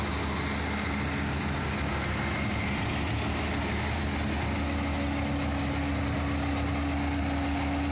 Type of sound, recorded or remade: recorded